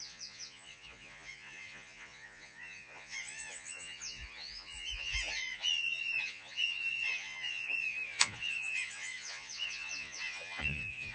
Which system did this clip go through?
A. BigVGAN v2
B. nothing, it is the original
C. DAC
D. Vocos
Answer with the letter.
D